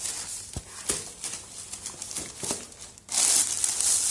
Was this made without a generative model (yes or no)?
yes